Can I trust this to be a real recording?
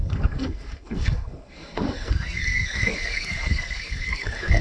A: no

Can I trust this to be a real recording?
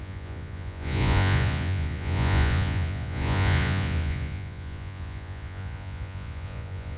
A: no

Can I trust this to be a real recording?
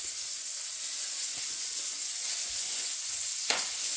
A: no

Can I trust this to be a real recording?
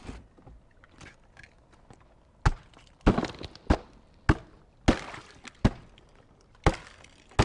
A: yes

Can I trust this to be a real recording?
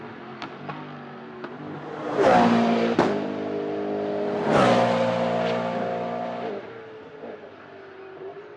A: yes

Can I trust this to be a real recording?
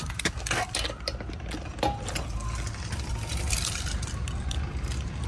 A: yes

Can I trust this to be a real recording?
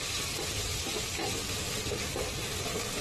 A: yes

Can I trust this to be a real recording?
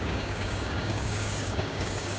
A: no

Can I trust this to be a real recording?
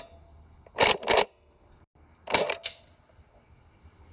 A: yes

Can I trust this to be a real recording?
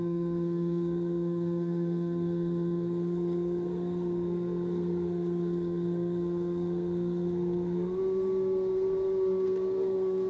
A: no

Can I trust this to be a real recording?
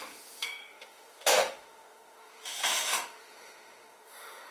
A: no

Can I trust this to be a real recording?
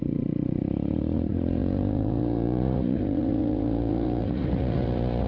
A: no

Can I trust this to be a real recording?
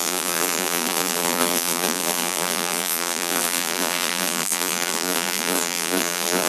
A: no